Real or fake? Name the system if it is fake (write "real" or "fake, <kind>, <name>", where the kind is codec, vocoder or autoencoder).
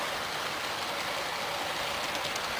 real